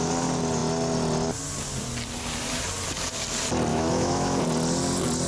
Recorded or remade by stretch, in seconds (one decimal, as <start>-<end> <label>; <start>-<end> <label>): 0.0-3.7 recorded; 3.7-4.4 remade; 4.4-5.3 recorded